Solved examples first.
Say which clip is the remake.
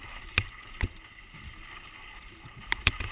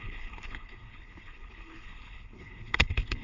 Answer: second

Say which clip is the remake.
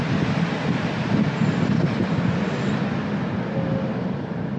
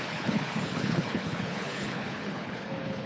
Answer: second